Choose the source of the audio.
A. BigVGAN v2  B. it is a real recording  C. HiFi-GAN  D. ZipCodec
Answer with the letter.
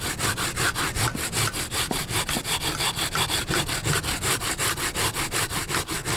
B